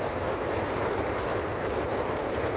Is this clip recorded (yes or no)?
no